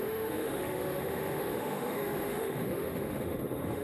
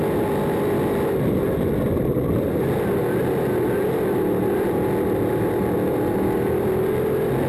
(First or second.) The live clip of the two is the second